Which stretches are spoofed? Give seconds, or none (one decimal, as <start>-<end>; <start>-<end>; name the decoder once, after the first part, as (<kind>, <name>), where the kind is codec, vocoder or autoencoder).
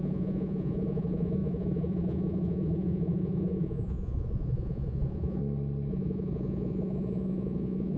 0.0-5.4 (vocoder, Vocos); 5.9-8.0